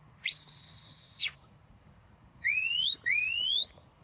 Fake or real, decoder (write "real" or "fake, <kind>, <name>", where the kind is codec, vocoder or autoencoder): fake, vocoder, Vocos